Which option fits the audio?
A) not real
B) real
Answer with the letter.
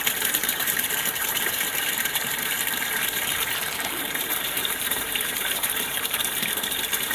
A